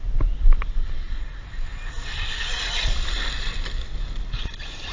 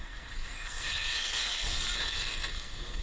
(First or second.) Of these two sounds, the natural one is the first